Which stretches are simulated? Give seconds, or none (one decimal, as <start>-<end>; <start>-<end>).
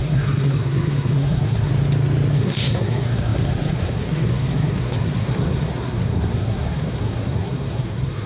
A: 0.0-1.7; 2.3-8.3